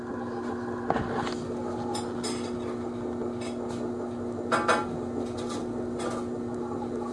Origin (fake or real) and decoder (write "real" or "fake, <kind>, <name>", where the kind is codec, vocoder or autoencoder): real